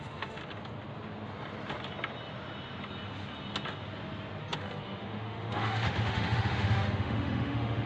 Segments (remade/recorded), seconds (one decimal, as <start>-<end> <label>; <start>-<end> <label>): 0.0-0.4 remade; 0.4-4.4 recorded; 4.4-7.9 remade